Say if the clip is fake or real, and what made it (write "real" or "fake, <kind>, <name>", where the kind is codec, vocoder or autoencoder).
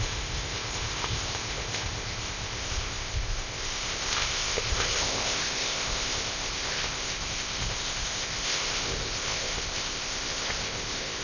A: fake, codec, ZipCodec